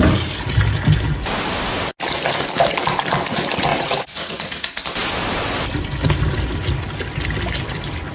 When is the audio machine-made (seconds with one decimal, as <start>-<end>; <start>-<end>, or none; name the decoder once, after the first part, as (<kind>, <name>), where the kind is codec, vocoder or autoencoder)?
3.7-4.8 (vocoder, Vocos)